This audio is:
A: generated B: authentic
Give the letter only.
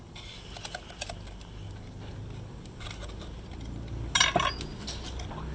B